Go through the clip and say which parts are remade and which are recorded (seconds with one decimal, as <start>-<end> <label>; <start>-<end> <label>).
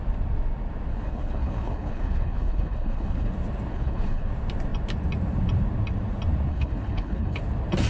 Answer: 0.0-0.9 recorded; 0.9-3.3 remade; 3.3-3.7 recorded; 3.7-4.3 remade; 4.3-6.5 recorded; 6.5-7.4 remade; 7.4-7.9 recorded